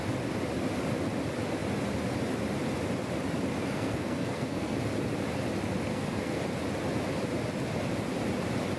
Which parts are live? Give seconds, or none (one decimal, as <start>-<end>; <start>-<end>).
0.0-3.6; 4.8-5.9; 6.4-8.8